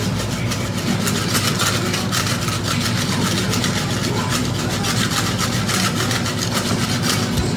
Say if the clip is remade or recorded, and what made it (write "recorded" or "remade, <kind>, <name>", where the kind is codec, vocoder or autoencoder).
recorded